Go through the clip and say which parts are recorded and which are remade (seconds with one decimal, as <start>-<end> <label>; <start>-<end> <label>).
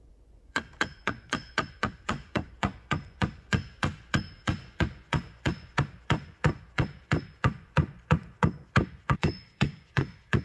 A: 0.0-10.4 remade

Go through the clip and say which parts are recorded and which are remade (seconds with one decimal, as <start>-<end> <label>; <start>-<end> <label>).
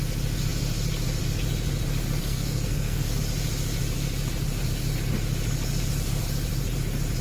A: 0.0-2.2 recorded; 2.2-3.2 remade; 3.2-7.2 recorded